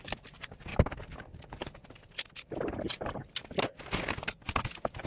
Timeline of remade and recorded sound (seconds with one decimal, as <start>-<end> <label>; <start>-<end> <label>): 0.0-0.7 remade; 0.7-3.8 recorded; 3.8-5.1 remade